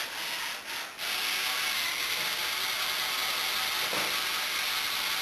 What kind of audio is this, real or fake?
real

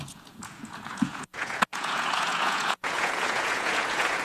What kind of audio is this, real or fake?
fake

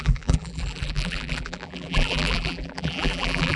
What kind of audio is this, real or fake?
fake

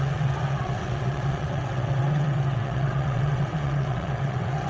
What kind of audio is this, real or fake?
fake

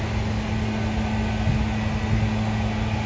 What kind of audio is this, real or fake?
real